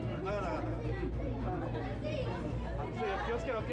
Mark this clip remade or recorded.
recorded